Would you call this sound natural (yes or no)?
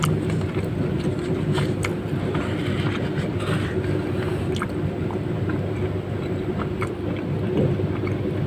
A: yes